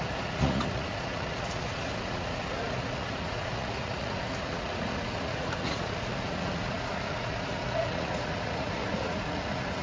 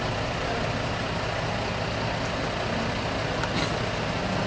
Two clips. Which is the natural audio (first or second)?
second